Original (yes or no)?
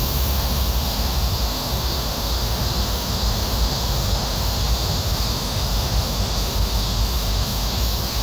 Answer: no